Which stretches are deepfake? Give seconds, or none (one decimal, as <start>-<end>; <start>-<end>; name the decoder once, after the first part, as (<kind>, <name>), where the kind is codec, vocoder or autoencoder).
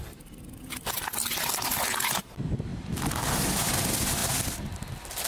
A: none